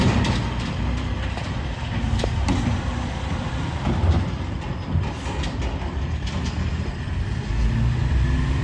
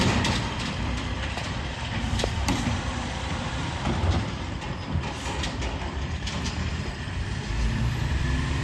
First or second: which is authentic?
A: first